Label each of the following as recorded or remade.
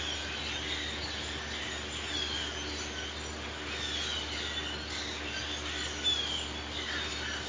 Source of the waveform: recorded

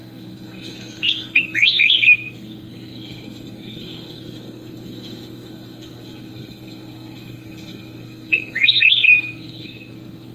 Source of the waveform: remade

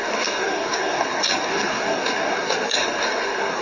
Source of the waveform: remade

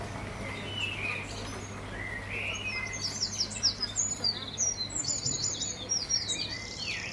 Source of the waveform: recorded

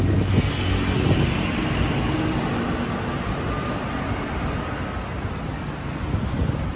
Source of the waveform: recorded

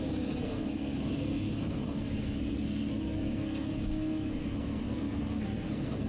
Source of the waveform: remade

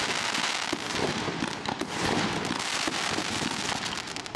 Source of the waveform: recorded